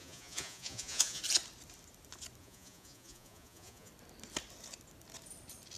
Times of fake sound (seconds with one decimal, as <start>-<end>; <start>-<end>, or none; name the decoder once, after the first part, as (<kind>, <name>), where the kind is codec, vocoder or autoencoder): 0.0-1.2 (vocoder, Vocos); 2.4-3.9